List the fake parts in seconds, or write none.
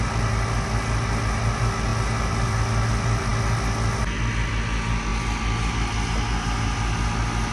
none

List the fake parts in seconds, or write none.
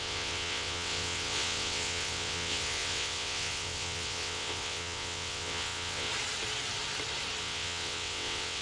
0.0-6.1 (vocoder, WaveNeXt); 7.4-8.6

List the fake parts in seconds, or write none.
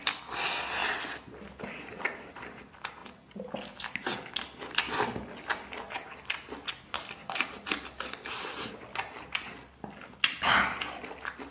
none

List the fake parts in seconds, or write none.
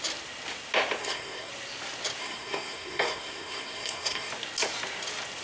1.0-1.5 (codec, SNAC); 2.2-4.3